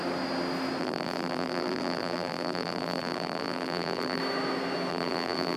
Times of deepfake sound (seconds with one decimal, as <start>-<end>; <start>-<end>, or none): 0.8-4.2; 4.9-5.6